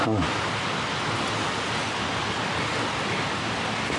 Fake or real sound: real